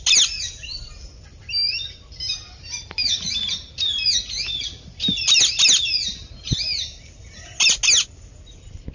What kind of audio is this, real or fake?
real